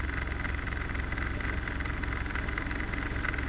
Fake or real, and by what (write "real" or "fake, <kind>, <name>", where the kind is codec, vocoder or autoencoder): real